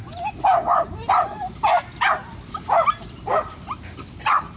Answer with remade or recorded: recorded